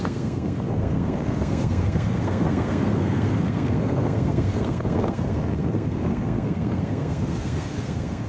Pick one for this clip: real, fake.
fake